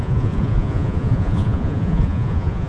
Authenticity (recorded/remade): remade